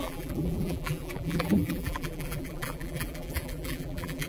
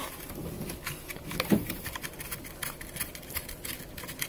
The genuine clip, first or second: second